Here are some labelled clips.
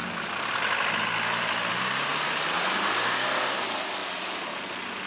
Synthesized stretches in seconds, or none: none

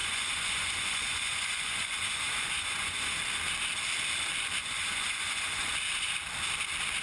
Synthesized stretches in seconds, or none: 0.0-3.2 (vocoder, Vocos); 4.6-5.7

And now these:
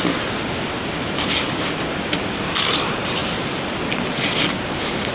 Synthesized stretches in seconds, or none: none